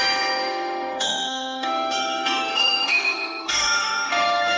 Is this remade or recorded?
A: remade